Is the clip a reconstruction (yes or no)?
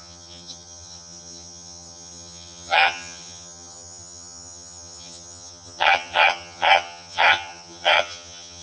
yes